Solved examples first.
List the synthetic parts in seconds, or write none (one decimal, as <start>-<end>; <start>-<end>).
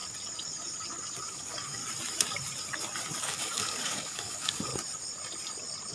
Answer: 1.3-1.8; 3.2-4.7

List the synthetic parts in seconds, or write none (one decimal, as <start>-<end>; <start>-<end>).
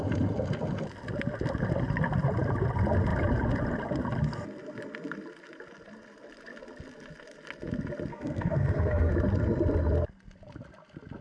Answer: 8.1-9.1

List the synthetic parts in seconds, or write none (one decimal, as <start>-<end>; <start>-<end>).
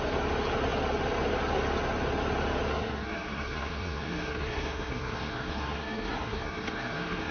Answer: 2.7-7.3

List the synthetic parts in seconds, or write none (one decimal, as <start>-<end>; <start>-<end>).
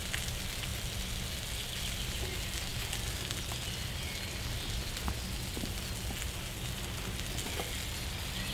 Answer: none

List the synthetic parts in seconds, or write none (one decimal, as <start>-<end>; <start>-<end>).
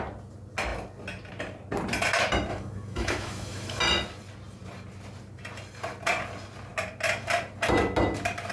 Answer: 2.5-3.8